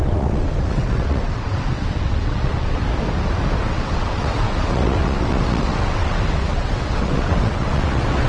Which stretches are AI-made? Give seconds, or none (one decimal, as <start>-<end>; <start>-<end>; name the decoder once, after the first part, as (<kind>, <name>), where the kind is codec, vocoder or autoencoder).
0.0-2.8 (vocoder, WaveNeXt); 3.6-8.3